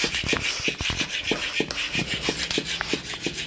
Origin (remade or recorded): recorded